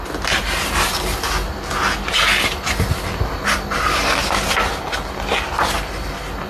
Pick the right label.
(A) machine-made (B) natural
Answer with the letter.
B